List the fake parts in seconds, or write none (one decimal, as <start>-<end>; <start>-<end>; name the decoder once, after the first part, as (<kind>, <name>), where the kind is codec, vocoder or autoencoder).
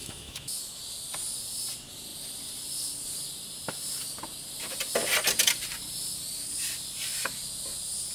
0.0-0.8 (autoencoder, DAC-VAE)